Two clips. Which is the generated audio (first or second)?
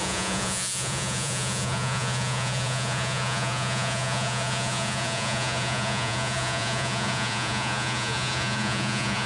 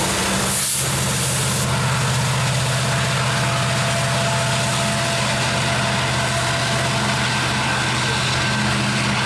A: first